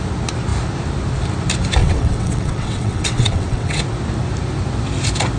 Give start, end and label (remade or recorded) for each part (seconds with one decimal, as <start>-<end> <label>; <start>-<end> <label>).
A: 0.0-1.8 recorded; 1.8-3.8 remade; 3.8-5.4 recorded